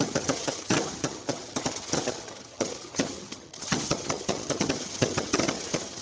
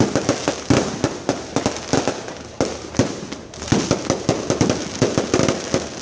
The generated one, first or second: first